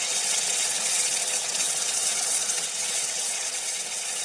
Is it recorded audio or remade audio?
remade